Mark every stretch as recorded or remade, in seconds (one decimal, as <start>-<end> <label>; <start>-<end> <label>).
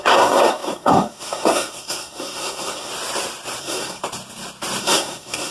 0.0-2.9 remade; 2.9-3.6 recorded; 3.6-4.0 remade; 4.0-4.8 recorded; 4.8-5.5 remade